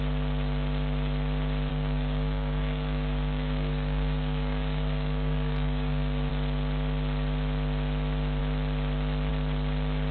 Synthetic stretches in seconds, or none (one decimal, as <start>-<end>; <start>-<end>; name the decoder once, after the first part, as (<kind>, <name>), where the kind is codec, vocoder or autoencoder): 1.7-6.3 (codec, DAC)